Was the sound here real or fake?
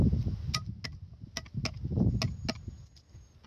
real